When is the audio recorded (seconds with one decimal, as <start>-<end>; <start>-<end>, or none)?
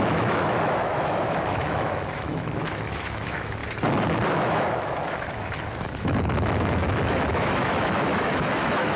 3.6-4.3